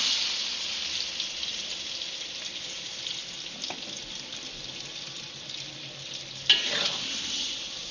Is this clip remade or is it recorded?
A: recorded